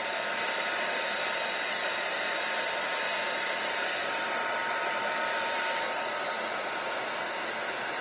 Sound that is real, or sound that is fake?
fake